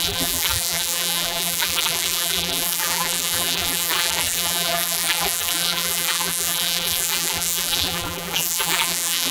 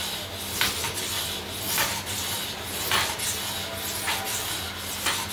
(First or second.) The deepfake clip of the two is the first